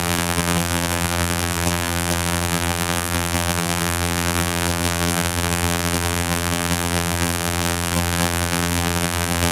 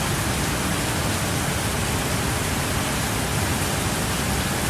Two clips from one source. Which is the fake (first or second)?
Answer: first